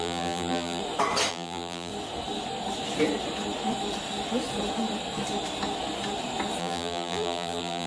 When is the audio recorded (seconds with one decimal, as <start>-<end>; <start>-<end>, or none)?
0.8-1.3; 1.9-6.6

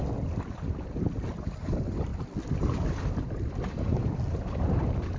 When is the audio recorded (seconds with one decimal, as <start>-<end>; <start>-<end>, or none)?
0.0-5.2

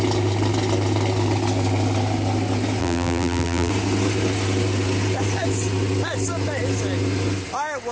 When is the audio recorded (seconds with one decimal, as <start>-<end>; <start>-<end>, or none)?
0.0-2.8; 3.7-7.9